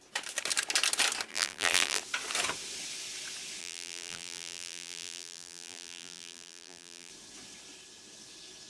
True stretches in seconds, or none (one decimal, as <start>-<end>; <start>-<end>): 0.0-1.3; 2.0-3.6; 7.1-8.7